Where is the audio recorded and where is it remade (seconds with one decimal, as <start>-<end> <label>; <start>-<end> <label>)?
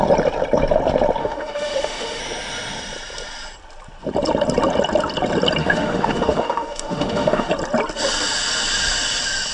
0.0-1.2 recorded; 1.2-2.2 remade; 2.2-5.6 recorded; 5.6-7.5 remade; 7.5-9.5 recorded